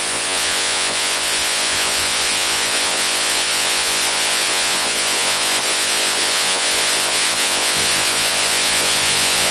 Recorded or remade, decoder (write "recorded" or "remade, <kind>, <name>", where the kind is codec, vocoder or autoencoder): remade, vocoder, Vocos